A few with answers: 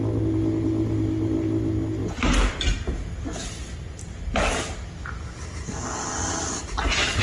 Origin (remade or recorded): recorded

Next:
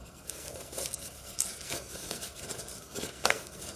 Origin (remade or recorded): remade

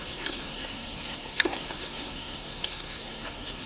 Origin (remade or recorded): remade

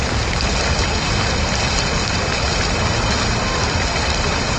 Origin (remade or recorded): recorded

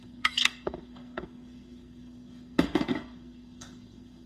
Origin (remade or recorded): remade